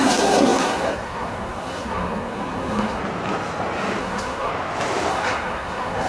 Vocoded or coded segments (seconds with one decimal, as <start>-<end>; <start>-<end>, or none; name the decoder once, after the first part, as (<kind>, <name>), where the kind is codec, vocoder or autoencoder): 0.0-3.0 (codec, SNAC); 4.0-4.5; 5.1-6.1